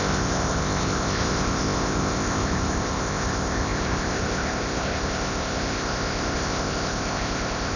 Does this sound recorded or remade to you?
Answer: remade